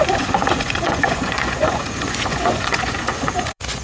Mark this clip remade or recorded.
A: remade